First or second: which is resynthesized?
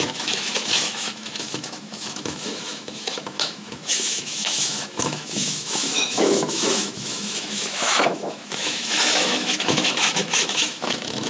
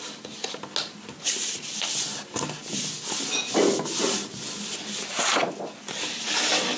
first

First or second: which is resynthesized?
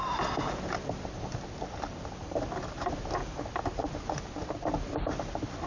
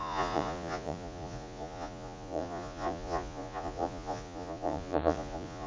second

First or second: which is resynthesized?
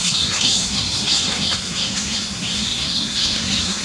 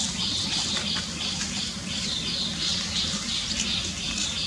first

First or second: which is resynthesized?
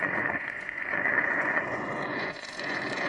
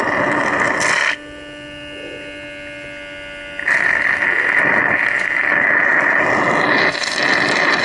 first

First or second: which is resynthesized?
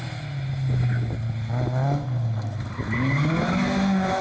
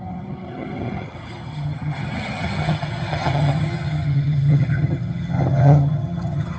second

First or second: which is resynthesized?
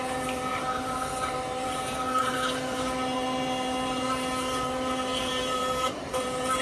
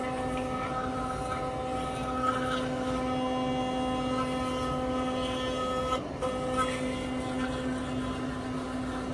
first